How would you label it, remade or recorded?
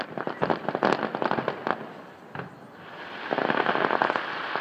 recorded